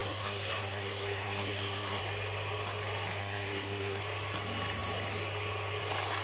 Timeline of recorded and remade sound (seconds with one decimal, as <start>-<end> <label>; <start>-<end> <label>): 0.0-2.0 remade; 2.0-3.2 recorded; 3.2-4.0 remade; 4.0-6.2 recorded